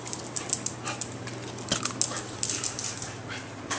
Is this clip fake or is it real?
real